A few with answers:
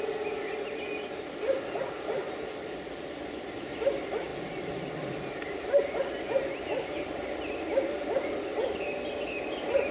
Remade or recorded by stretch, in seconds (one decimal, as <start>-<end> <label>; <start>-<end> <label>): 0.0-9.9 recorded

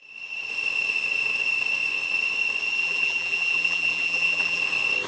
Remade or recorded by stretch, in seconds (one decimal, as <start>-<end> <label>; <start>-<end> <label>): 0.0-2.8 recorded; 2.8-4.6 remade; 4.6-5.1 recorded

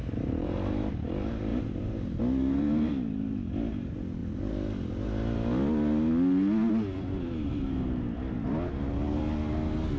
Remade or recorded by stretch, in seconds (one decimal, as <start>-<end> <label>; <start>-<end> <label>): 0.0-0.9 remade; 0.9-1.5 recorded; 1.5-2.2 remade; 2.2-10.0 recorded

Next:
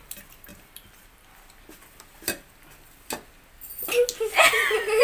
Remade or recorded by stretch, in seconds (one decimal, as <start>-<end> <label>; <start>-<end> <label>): 0.0-0.5 recorded; 0.5-2.9 remade; 2.9-5.0 recorded

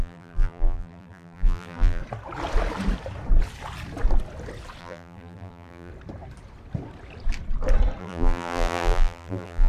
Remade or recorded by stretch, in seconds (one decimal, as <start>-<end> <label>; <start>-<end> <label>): 0.0-2.0 remade; 2.0-4.8 recorded; 4.8-5.9 remade; 5.9-8.0 recorded; 8.0-9.7 remade

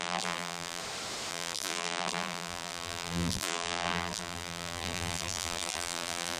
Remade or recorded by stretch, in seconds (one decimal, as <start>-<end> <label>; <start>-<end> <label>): 0.0-0.8 remade; 0.8-1.3 recorded; 1.3-6.4 remade

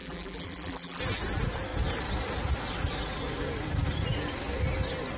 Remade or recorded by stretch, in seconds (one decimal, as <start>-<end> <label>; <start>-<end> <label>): 0.0-1.0 remade; 1.0-5.2 recorded

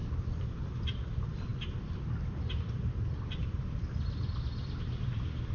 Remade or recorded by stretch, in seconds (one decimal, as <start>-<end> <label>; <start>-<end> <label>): 0.0-0.6 recorded; 0.6-5.5 remade